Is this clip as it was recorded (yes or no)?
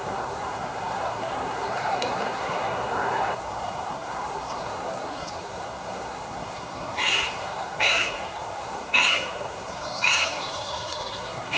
no